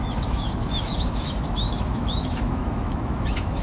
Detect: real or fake fake